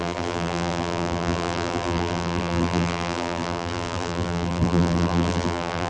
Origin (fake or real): fake